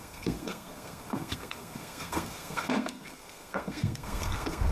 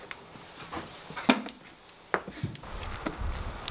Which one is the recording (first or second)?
second